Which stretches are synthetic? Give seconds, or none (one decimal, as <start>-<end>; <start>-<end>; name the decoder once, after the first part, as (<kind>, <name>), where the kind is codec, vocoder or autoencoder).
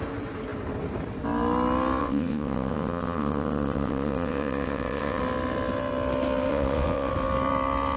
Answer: 2.0-5.2 (vocoder, WaveNeXt); 6.5-7.1